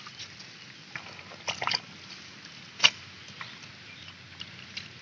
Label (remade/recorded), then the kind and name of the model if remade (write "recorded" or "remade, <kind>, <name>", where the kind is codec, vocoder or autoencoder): recorded